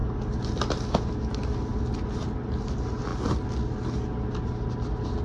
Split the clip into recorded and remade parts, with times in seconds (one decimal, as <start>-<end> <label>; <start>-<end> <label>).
0.0-5.2 recorded